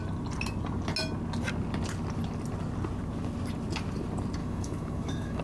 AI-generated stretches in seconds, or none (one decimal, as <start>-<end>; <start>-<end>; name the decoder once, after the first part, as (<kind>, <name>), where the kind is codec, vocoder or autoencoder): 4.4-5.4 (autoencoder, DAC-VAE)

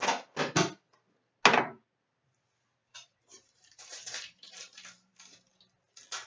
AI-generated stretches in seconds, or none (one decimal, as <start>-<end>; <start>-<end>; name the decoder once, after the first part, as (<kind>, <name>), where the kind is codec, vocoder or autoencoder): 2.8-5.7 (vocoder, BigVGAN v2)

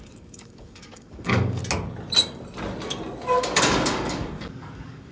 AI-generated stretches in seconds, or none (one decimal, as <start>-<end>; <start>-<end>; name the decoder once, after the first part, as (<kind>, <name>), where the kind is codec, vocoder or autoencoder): 0.0-1.6 (codec, DAC); 3.4-5.1

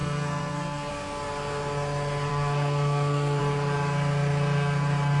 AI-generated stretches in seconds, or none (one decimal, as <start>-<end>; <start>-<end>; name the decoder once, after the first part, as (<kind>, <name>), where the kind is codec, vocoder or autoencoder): 0.0-0.9 (codec, SNAC); 2.3-3.4

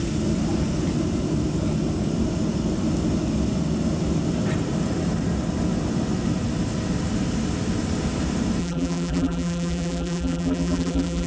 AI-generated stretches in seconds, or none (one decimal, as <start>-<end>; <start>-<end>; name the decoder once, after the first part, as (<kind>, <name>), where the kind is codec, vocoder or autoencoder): 8.6-11.3 (vocoder, BigVGAN v2)

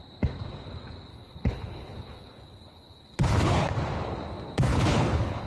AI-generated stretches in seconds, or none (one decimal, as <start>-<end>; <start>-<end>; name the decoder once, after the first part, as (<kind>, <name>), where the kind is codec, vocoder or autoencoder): 1.1-3.7 (codec, HILCodec); 4.7-5.5

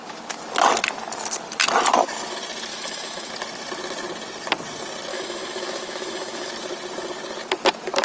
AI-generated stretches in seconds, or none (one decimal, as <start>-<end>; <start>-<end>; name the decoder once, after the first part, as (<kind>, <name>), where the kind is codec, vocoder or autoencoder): 2.7-3.3 (autoencoder, DAC-VAE); 5.1-6.5

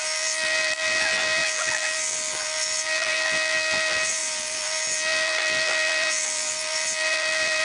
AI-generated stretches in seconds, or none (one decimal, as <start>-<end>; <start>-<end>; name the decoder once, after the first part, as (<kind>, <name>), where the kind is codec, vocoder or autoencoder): 0.0-7.6 (vocoder, BigVGAN v2)